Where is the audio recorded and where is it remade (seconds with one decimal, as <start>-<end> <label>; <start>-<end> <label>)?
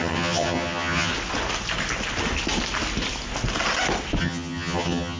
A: 0.0-1.1 remade; 1.1-4.2 recorded; 4.2-5.2 remade